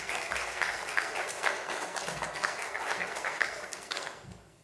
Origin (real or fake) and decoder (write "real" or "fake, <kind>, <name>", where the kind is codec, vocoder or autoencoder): fake, codec, SNAC